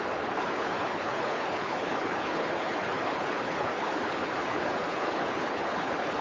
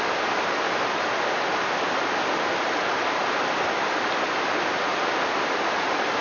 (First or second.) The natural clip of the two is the second